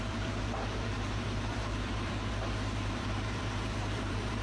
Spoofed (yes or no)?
yes